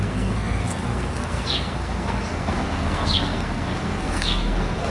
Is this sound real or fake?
fake